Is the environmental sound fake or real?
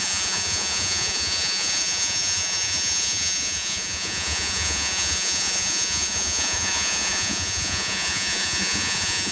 fake